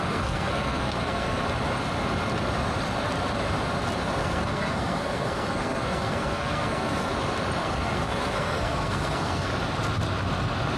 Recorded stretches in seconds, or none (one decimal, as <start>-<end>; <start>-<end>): 1.4-4.2; 7.1-7.6; 9.5-10.8